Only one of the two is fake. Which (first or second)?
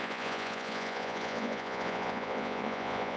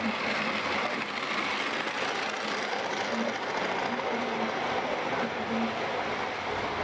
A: first